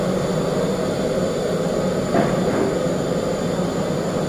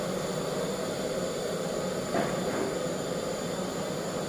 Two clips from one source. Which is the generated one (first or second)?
second